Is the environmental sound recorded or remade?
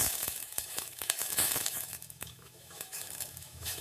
remade